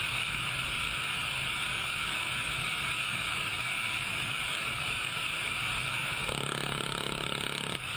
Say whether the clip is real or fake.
fake